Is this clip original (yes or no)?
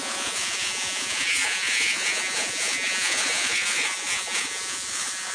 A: no